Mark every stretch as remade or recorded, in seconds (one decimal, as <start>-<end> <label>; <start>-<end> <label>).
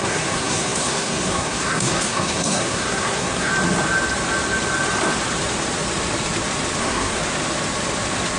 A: 0.0-3.5 remade; 3.5-6.8 recorded; 6.8-7.2 remade; 7.2-8.4 recorded